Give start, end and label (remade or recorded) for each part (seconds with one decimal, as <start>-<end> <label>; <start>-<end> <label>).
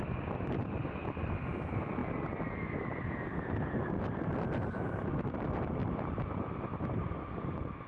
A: 0.0-7.9 recorded